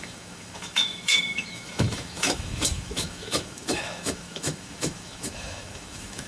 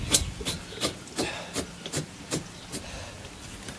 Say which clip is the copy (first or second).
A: first